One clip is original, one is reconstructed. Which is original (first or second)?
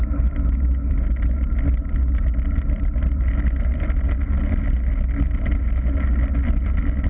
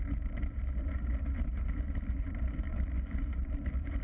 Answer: first